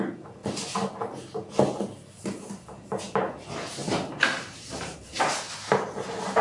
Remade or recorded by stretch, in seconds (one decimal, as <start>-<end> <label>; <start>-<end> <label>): 0.0-3.8 recorded; 3.8-5.4 remade; 5.4-6.4 recorded